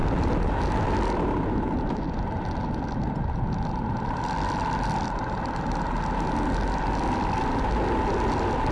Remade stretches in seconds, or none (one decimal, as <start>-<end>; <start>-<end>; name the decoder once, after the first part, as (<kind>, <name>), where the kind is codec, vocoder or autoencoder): none